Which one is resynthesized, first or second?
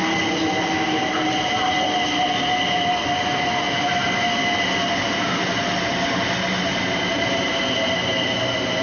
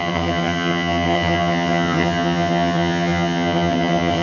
second